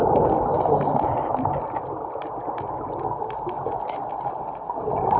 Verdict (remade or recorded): recorded